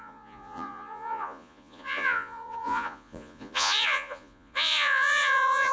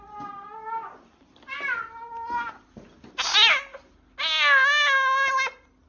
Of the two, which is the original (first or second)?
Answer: second